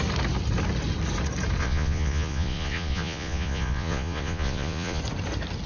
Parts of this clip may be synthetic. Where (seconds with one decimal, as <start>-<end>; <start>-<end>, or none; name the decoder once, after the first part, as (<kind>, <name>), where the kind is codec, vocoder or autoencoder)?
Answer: 1.6-5.0 (vocoder, Vocos)